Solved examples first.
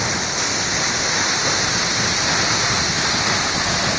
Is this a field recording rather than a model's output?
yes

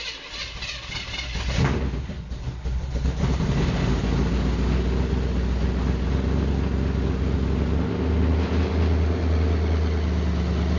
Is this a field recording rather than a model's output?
yes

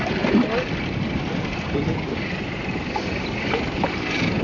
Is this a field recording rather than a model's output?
yes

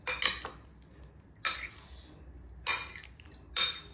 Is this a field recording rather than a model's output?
yes